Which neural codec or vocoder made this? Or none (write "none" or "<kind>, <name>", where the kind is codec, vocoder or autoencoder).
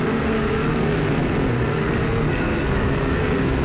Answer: codec, SNAC